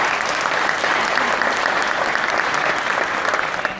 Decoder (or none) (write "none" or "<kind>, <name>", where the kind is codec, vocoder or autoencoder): none